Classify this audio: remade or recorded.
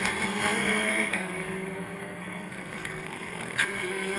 remade